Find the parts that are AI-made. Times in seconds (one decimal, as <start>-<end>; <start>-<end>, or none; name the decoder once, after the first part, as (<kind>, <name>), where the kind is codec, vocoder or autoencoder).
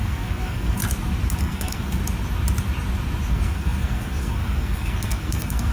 0.0-0.8 (codec, SNAC); 1.4-2.0; 3.3-5.7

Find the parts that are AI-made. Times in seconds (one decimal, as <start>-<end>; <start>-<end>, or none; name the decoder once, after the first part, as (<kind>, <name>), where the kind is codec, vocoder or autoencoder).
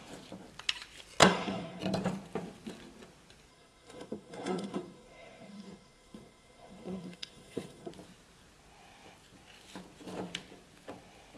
1.2-1.8 (codec, SNAC); 3.5-7.9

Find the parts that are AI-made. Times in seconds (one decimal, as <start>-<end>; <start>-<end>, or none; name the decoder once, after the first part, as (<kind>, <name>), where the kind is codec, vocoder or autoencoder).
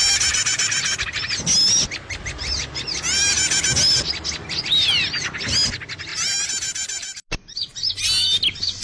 none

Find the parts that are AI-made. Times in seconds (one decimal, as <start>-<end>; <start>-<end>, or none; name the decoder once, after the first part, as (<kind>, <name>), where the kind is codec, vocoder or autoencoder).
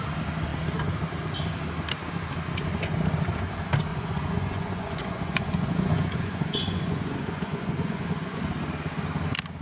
3.9-8.4 (vocoder, Vocos)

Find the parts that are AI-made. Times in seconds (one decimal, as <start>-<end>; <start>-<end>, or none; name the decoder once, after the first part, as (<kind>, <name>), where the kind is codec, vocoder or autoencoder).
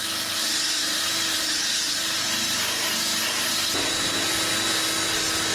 0.8-4.1 (vocoder, BigVGAN v2)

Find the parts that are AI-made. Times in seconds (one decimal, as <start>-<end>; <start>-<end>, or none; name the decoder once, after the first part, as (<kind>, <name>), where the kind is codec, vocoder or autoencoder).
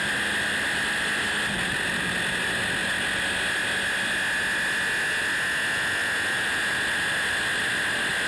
none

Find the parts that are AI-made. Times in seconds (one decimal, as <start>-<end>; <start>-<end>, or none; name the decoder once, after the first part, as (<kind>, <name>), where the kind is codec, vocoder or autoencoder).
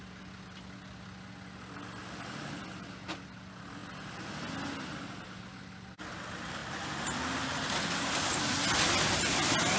none